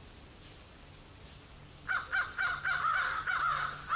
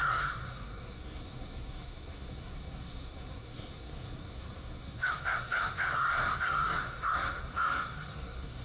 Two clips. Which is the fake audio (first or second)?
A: second